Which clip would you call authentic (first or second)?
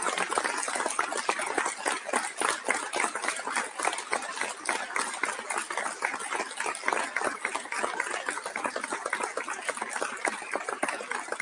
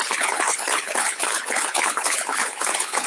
first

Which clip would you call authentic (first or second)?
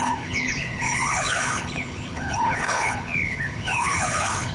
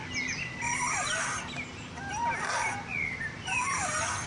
second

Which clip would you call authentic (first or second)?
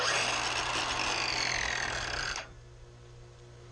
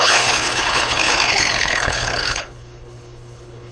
first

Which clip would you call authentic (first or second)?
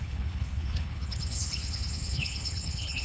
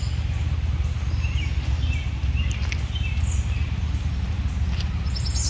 second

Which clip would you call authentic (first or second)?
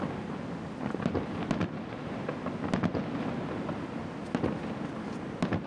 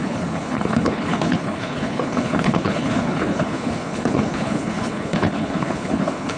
first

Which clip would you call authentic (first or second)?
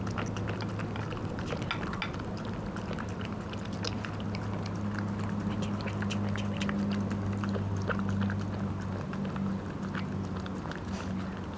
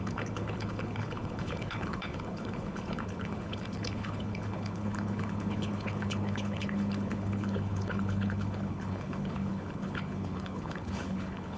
first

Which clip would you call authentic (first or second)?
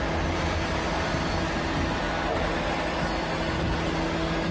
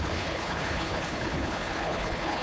first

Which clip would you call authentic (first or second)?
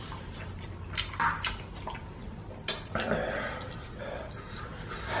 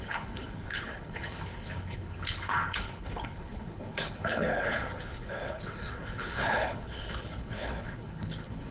first